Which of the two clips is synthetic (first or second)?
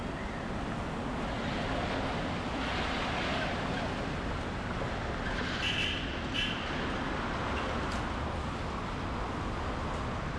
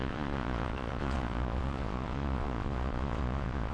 second